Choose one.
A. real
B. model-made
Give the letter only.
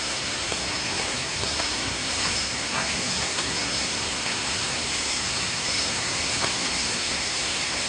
B